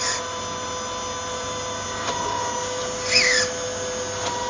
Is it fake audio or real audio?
real